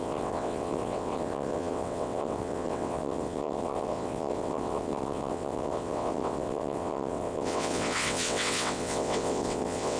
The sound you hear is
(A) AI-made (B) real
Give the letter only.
A